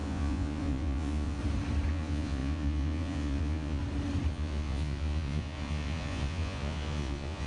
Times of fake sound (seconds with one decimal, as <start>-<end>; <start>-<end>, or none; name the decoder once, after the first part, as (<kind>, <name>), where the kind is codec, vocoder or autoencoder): 0.0-1.4 (vocoder, Vocos); 1.9-3.8; 4.3-7.5